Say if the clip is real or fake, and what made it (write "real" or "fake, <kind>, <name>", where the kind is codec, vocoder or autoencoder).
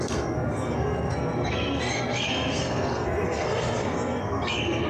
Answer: fake, codec, SNAC